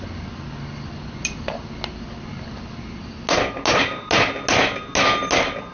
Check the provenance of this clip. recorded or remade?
recorded